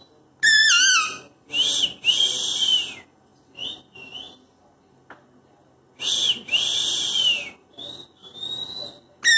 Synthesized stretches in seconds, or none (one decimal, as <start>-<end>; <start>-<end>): none